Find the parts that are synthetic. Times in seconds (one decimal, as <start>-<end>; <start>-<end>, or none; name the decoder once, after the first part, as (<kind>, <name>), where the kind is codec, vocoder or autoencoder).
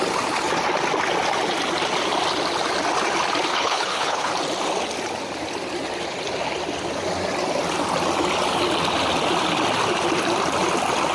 3.5-4.3 (codec, HILCodec)